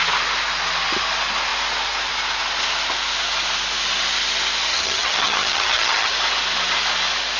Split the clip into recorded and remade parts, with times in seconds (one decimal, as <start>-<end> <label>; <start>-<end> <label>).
0.0-4.7 recorded; 4.7-6.1 remade; 6.1-7.4 recorded